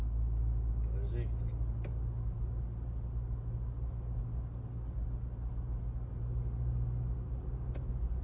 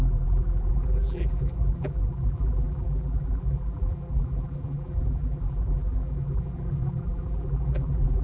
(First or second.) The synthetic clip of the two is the second